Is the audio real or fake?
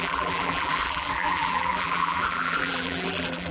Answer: fake